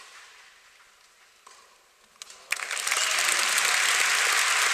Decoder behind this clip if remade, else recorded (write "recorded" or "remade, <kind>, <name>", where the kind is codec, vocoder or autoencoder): recorded